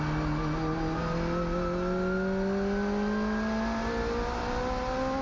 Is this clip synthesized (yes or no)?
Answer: no